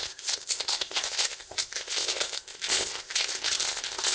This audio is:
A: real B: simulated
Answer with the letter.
B